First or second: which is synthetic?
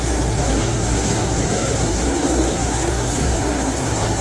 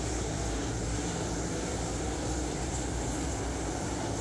first